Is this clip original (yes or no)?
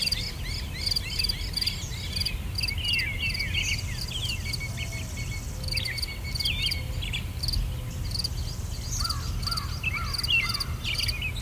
yes